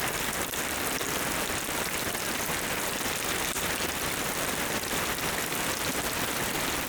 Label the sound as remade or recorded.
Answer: recorded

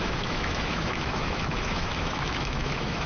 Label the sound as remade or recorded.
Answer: remade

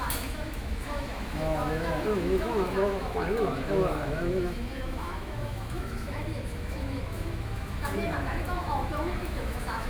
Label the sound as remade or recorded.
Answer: remade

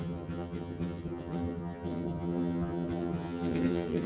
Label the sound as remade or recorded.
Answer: remade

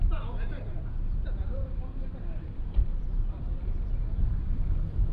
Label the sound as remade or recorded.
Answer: remade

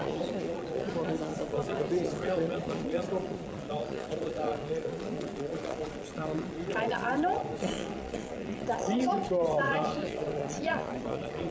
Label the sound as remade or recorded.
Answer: remade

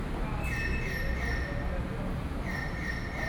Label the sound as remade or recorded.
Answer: recorded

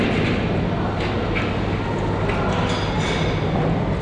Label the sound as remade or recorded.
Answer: recorded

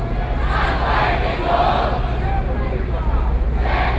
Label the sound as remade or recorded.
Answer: recorded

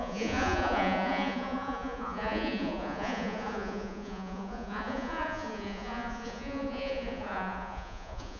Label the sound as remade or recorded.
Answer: remade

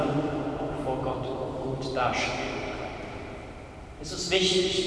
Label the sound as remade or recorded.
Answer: remade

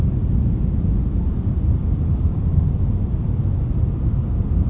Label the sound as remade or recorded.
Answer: recorded